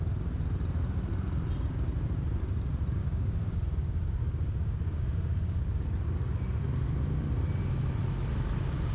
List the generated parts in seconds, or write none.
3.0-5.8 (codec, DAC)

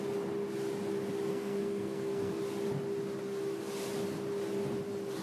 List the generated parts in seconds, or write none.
1.3-2.3 (codec, SNAC)

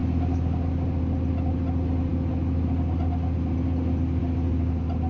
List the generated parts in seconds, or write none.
none

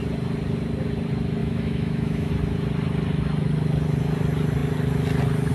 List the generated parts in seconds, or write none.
1.4-2.3 (autoencoder, DAC-VAE)

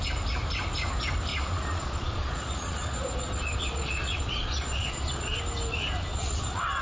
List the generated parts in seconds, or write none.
1.3-5.4 (vocoder, Vocos); 6.1-6.8

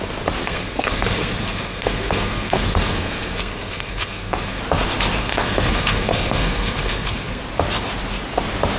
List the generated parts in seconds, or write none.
0.4-4.6 (codec, SNAC); 5.2-7.4